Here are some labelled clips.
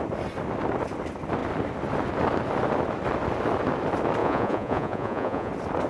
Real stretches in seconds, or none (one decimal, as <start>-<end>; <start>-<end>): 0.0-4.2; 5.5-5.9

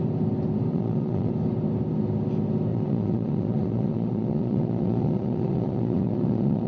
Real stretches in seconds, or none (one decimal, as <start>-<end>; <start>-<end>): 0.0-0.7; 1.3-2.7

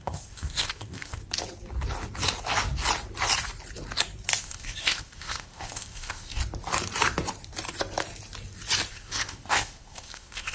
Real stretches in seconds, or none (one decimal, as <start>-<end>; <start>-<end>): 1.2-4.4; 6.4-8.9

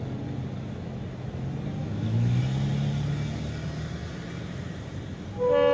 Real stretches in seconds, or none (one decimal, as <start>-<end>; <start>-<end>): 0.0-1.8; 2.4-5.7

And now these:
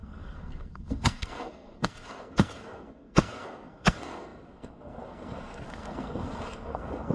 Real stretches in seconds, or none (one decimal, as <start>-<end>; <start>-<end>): none